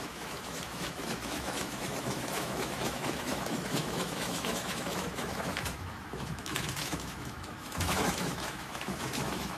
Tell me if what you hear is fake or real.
fake